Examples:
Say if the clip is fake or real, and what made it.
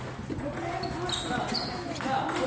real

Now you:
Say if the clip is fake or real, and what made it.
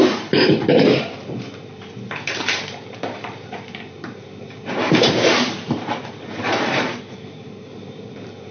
fake, vocoder, BigVGAN v2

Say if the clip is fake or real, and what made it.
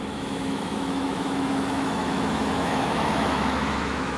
fake, autoencoder, DAC-VAE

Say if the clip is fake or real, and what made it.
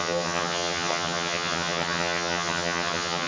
fake, vocoder, HiFi-GAN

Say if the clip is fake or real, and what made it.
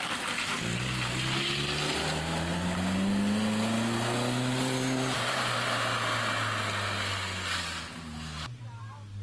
real